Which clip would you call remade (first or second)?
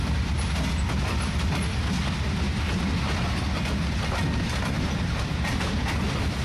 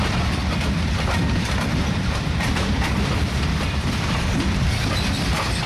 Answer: second